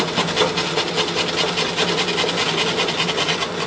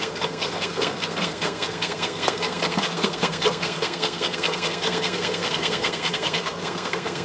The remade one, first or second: second